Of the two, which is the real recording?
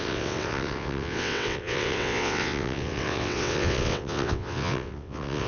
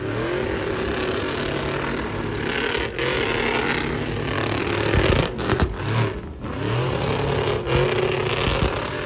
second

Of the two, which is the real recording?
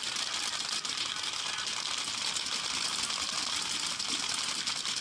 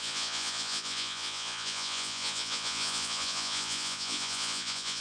first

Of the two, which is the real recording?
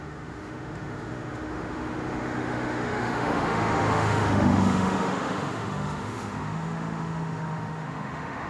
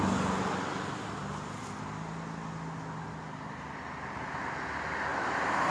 second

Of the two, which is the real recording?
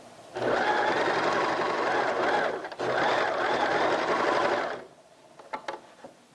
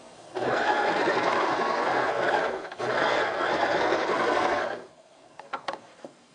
first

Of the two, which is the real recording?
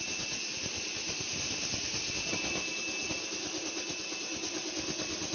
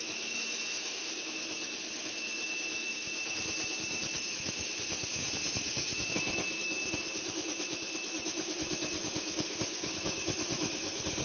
first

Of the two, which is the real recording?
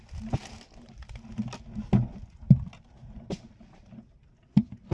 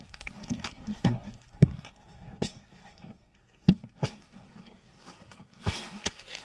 first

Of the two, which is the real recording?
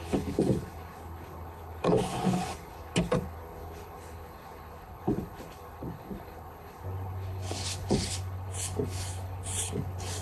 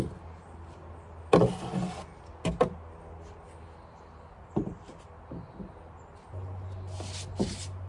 second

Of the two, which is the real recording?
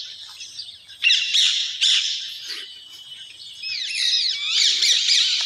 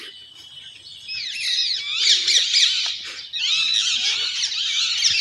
second